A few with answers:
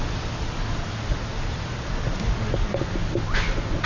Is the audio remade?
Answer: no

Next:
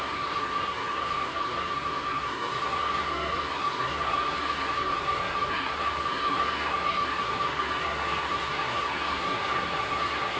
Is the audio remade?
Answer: yes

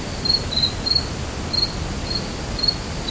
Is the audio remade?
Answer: no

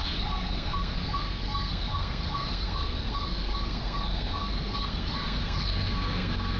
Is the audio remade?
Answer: yes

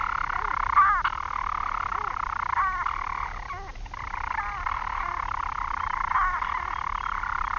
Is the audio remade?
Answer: no